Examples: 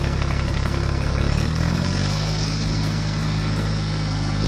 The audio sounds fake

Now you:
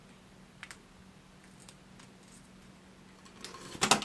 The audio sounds real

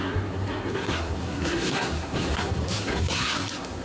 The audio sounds fake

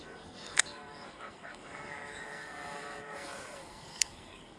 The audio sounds fake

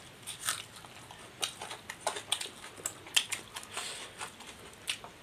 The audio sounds real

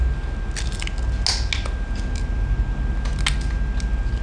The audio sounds real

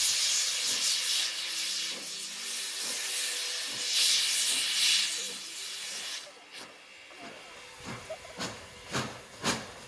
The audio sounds real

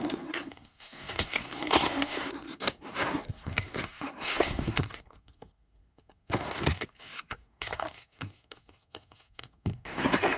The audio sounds fake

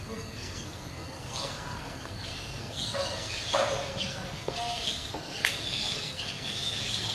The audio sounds fake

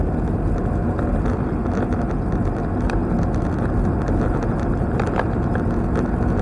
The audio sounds real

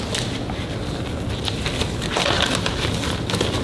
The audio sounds real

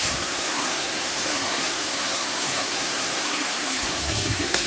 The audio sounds fake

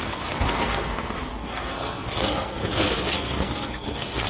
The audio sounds fake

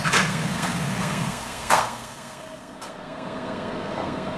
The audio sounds fake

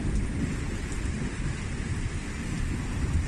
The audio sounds real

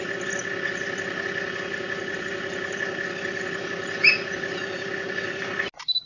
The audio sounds real